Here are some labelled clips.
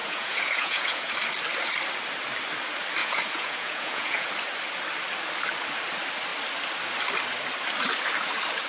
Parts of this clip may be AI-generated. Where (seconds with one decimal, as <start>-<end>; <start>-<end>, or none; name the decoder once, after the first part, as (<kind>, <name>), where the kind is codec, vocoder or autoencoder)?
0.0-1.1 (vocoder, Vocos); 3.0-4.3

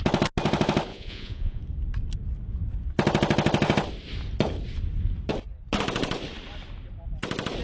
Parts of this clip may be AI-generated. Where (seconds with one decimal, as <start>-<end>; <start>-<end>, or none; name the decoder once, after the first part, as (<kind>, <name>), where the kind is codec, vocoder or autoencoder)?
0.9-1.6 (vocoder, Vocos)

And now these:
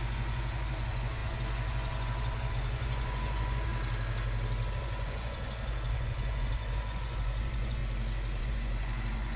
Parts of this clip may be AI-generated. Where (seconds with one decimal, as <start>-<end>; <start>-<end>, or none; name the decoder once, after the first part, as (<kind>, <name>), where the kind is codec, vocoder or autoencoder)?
0.0-3.7 (vocoder, Vocos); 4.8-7.8; 8.4-9.4

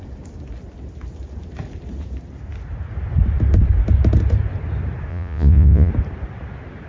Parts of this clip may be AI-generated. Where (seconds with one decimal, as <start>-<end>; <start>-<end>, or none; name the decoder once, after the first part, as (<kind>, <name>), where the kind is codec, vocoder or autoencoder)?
5.1-5.9 (vocoder, Vocos)